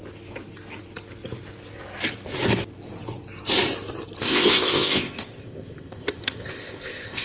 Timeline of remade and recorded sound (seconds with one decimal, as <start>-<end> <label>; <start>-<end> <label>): 0.0-4.2 recorded; 4.2-7.2 remade